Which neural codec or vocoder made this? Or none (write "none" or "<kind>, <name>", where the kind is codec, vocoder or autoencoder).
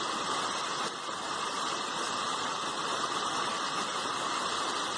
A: none